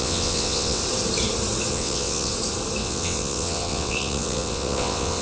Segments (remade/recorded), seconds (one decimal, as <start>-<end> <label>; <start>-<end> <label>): 0.0-0.8 remade; 0.8-1.7 recorded; 1.7-2.3 remade; 2.3-2.8 recorded; 2.8-5.2 remade